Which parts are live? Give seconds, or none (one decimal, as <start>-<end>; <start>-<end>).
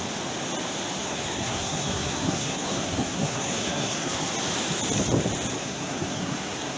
0.0-1.0; 4.3-5.6